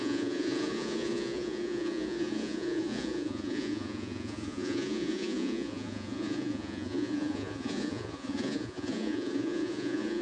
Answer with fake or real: fake